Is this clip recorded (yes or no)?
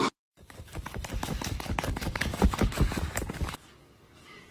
no